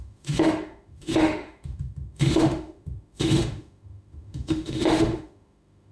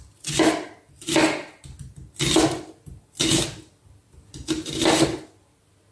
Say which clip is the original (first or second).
second